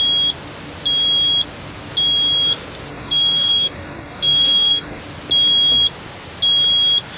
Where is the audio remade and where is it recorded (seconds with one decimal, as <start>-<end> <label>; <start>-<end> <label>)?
0.0-2.9 recorded; 2.9-5.0 remade; 5.0-7.2 recorded